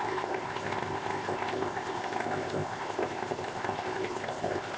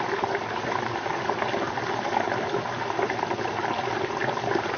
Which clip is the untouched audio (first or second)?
second